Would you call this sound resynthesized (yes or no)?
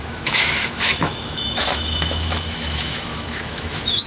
yes